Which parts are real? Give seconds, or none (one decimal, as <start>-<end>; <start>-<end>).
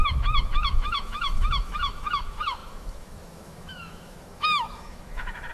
none